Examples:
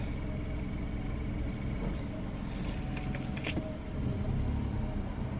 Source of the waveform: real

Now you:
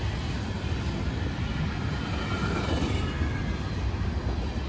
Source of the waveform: real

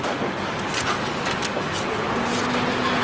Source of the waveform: real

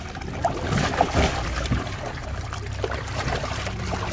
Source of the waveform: fake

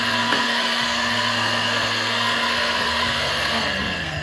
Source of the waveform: fake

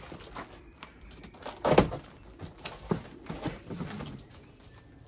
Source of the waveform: real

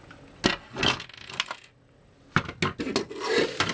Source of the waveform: real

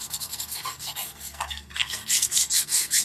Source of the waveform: fake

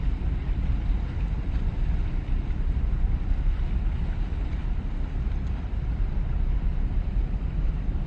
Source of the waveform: fake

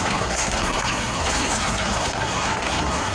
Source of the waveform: fake